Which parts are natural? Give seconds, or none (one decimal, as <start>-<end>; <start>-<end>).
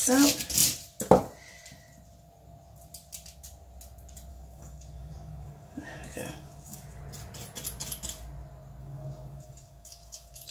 0.0-4.3; 7.0-8.8